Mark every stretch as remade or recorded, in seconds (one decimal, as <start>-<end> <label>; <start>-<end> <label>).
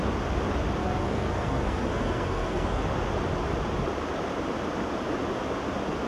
0.0-0.8 recorded; 0.8-2.8 remade; 2.8-6.1 recorded